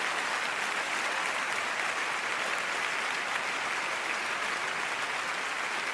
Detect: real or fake real